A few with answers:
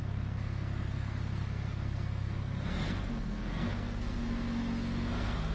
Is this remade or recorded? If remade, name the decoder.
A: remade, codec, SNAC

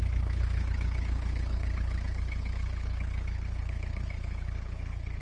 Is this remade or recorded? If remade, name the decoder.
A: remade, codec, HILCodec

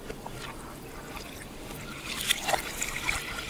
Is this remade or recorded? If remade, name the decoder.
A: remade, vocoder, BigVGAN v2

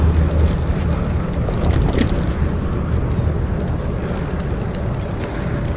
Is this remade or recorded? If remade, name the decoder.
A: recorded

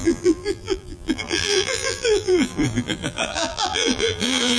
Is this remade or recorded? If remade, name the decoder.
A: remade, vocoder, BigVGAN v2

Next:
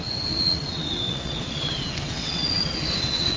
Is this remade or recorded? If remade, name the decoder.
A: remade, vocoder, WaveNeXt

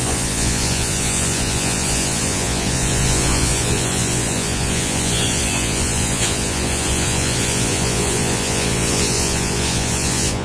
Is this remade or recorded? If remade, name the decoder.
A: remade, vocoder, Vocos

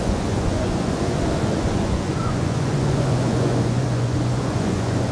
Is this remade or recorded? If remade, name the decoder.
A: remade, vocoder, Vocos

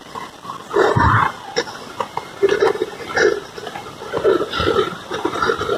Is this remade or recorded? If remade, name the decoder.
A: remade, vocoder, BigVGAN v2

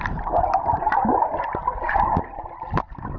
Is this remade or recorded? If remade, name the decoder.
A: recorded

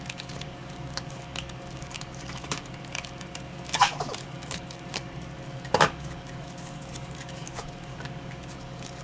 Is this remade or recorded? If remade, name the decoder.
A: remade, codec, DAC